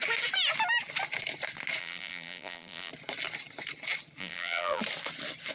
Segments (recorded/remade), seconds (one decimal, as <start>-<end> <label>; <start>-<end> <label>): 0.0-1.8 recorded; 1.8-2.9 remade; 2.9-4.2 recorded; 4.2-4.8 remade; 4.8-5.5 recorded